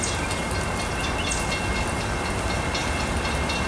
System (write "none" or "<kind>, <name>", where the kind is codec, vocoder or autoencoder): none